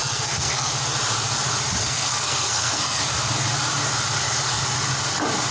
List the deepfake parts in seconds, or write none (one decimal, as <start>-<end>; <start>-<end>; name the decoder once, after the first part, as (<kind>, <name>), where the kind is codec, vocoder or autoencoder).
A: 0.0-0.7 (codec, SNAC); 1.8-3.0